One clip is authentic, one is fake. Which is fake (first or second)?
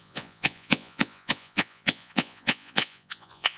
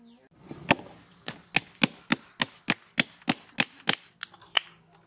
first